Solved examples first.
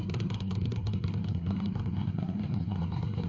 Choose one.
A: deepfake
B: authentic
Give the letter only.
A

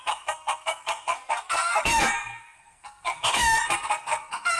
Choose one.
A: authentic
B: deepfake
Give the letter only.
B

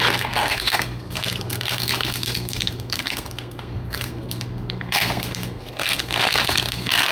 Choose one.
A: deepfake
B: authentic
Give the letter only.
A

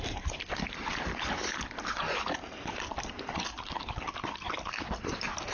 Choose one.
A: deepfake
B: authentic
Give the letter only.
B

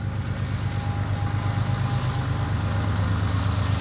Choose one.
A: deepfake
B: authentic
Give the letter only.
B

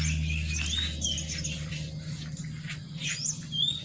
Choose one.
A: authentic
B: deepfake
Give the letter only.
A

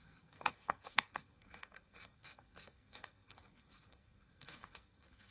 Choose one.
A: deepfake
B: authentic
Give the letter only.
A